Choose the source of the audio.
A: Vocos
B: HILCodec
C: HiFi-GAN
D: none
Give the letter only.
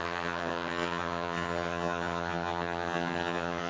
C